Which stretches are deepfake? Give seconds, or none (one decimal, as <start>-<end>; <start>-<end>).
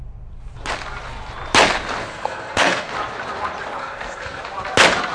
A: 2.1-2.9; 3.8-4.4